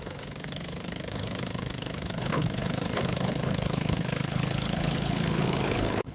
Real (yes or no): no